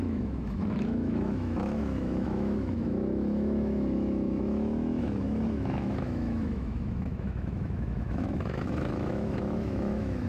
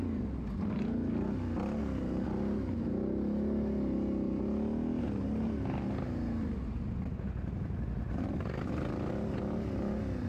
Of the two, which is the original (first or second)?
second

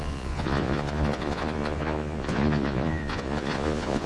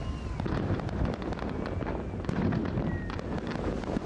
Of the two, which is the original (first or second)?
second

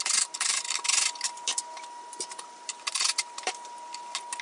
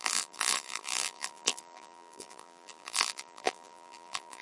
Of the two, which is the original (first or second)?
first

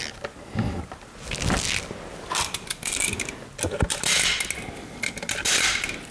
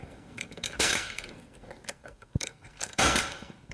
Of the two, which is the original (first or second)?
first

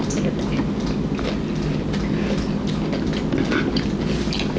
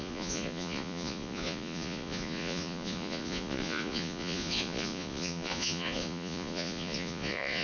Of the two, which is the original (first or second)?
first